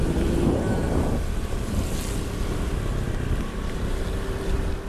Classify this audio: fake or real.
real